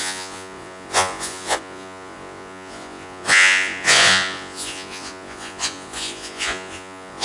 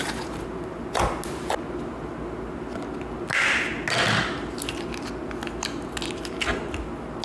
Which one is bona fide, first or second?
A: second